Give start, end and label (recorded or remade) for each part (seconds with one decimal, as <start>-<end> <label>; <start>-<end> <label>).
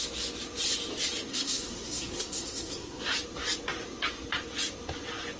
0.0-1.3 recorded; 1.3-3.1 remade; 3.1-5.4 recorded